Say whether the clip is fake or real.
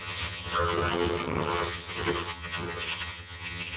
fake